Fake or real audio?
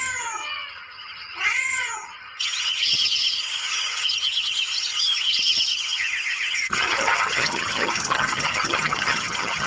fake